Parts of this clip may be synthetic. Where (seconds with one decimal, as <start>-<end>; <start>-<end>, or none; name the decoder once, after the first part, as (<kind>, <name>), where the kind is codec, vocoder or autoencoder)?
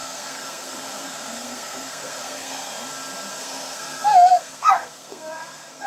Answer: 0.0-2.7 (codec, SNAC); 3.3-5.9